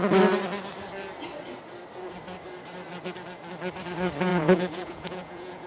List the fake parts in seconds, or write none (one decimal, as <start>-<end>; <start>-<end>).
4.3-5.7